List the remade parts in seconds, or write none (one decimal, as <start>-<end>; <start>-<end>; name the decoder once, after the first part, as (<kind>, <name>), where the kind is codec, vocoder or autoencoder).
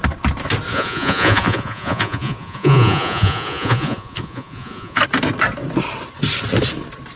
0.7-5.0 (vocoder, Vocos)